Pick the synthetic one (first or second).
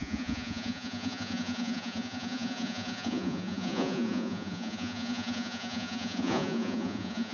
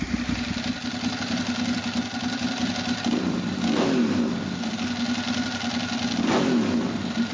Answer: first